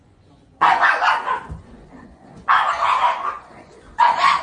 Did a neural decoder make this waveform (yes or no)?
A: yes